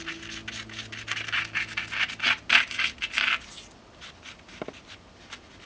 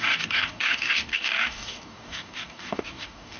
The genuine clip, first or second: first